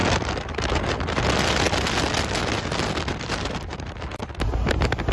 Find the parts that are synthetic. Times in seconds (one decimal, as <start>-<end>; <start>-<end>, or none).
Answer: 3.1-4.2